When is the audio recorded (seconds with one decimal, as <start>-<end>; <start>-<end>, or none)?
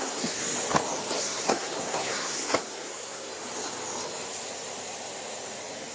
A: 0.4-1.2; 3.3-5.9